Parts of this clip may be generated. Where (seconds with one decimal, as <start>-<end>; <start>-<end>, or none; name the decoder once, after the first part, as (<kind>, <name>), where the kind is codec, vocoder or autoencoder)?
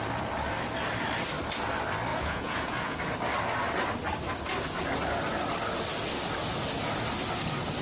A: 2.1-3.0 (vocoder, Vocos)